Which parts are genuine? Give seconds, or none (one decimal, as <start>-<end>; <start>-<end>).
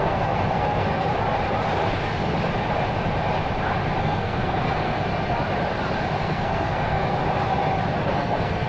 1.1-4.0; 5.1-6.2; 7.2-8.1